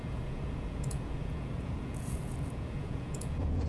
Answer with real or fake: fake